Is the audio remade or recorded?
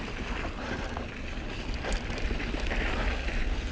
recorded